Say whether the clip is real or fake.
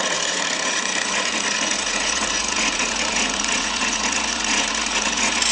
fake